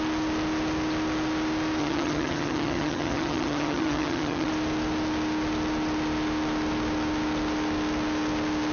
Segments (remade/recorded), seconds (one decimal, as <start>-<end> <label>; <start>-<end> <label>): 0.0-1.8 recorded; 1.8-4.5 remade; 4.5-8.7 recorded